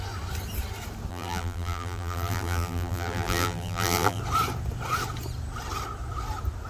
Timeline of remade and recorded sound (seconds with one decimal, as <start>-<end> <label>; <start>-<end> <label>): 0.0-1.1 recorded; 1.1-4.2 remade; 4.2-6.7 recorded